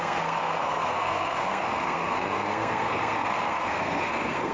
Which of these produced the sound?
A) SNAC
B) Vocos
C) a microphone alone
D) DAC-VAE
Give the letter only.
A